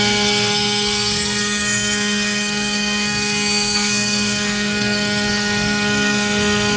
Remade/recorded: remade